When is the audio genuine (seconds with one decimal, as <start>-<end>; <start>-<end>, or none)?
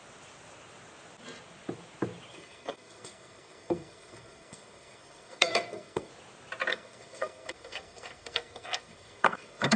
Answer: 0.0-2.3; 6.1-6.7